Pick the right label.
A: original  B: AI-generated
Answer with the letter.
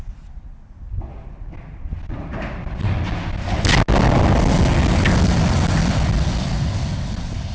A